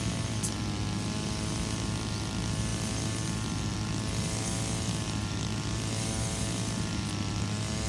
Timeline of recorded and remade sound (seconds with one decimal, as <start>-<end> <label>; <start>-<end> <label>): 0.0-7.9 recorded